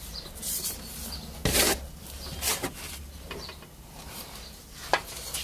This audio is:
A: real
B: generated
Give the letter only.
A